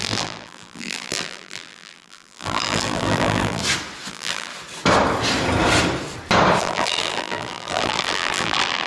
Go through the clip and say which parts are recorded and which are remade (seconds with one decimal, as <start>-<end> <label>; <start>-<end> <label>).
0.0-3.6 remade; 3.6-4.1 recorded; 4.1-4.5 remade; 4.5-6.6 recorded; 6.6-8.9 remade